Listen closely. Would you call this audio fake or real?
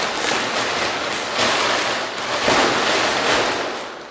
real